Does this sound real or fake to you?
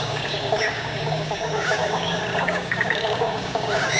fake